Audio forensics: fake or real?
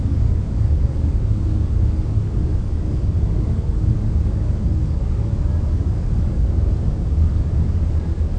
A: fake